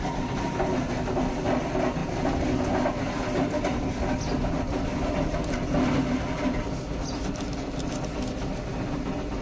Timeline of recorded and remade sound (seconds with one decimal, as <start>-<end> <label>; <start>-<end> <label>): 0.0-9.4 recorded